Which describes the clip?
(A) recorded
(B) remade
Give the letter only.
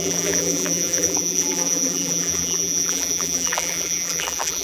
B